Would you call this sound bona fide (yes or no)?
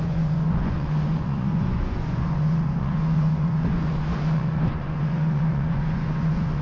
no